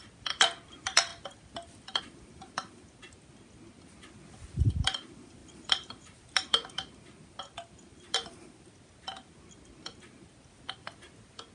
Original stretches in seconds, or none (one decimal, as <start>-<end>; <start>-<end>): 0.0-5.4; 7.4-7.9; 8.6-11.5